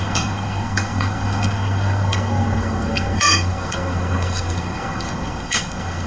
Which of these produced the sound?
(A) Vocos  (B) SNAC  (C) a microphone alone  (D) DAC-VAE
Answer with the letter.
B